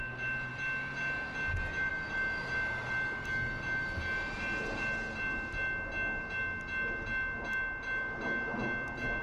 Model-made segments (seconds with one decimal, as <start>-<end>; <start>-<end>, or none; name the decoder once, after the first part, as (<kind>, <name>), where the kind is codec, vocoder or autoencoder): none